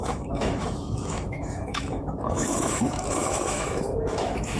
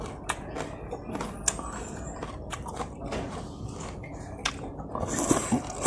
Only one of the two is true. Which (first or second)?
second